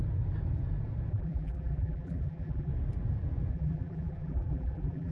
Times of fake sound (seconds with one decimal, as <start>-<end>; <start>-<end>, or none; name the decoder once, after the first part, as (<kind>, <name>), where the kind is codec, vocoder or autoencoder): 1.1-2.7 (vocoder, BigVGAN v2); 3.5-5.1